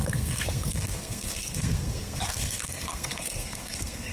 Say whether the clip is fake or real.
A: fake